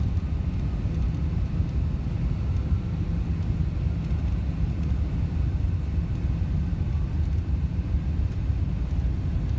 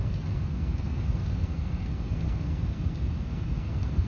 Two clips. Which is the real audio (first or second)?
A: first